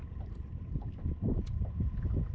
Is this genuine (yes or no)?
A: yes